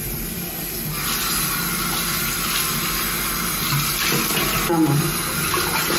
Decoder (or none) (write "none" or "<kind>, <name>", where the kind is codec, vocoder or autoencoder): none